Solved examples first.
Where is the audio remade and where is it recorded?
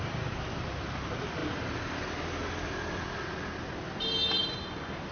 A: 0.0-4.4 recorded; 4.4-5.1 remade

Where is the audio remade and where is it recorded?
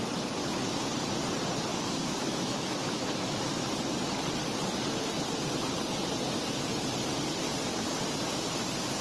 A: 0.0-1.7 recorded; 1.7-3.5 remade; 3.5-9.0 recorded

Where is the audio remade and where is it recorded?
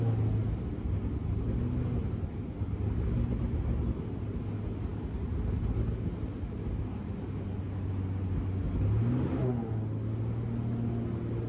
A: 0.0-11.5 recorded